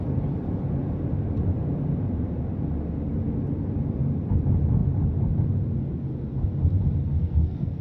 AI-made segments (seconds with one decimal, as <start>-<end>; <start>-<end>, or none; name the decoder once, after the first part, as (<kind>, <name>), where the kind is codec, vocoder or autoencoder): 7.0-7.8 (codec, SNAC)